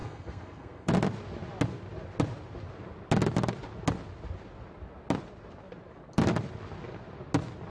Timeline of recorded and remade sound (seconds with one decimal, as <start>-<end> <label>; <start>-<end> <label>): 0.0-0.9 remade; 0.9-7.7 recorded